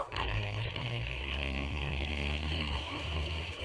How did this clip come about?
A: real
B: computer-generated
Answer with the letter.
B